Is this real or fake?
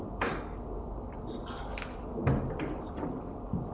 real